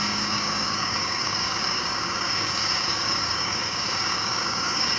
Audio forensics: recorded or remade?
remade